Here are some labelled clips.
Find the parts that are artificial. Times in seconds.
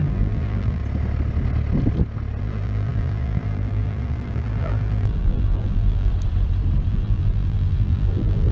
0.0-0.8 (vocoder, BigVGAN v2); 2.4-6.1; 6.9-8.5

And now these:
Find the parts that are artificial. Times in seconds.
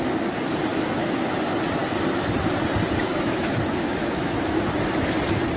0.7-1.3 (autoencoder, DAC-VAE); 3.1-4.7